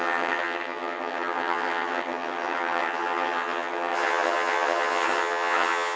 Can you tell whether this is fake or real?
fake